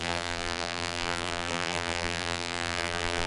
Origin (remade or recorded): remade